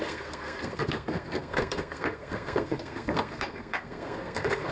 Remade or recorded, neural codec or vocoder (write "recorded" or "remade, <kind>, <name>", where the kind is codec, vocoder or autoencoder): remade, codec, SNAC